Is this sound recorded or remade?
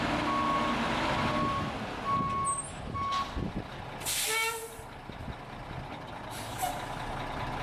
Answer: recorded